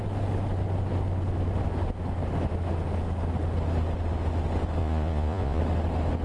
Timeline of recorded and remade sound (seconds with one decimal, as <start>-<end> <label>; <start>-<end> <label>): 0.0-4.8 recorded; 4.8-5.6 remade; 5.6-6.2 recorded